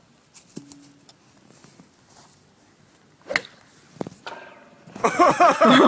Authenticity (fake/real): real